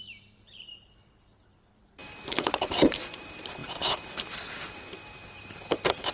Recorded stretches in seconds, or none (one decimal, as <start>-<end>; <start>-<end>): none